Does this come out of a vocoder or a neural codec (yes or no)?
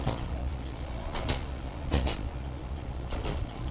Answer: yes